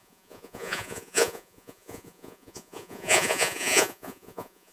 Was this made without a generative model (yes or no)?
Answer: no